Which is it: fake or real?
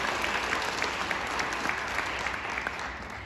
real